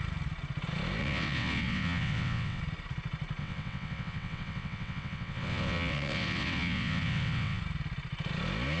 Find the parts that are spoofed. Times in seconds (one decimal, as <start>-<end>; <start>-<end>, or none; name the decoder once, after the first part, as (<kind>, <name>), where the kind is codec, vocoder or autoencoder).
1.0-2.6 (vocoder, WaveNeXt); 3.4-7.6